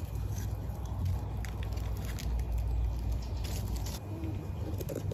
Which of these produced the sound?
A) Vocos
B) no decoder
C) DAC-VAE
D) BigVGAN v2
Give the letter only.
B